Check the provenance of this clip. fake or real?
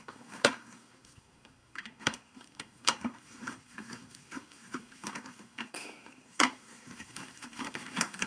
fake